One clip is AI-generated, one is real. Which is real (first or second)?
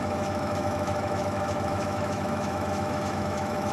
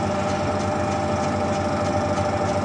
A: second